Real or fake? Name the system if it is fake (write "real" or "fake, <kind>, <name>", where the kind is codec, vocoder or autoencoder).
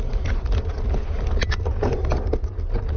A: real